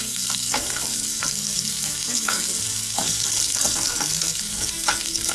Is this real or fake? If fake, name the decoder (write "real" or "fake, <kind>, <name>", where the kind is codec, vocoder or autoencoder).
fake, codec, SNAC